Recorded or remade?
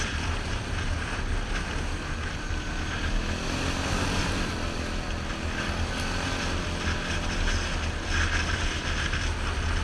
recorded